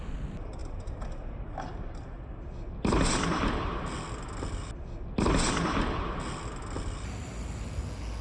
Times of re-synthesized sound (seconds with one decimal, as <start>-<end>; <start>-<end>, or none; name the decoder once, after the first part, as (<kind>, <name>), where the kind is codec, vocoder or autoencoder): none